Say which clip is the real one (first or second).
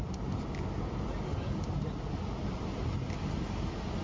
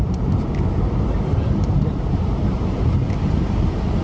first